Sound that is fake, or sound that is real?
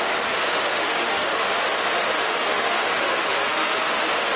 fake